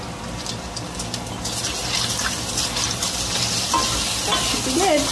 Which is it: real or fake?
real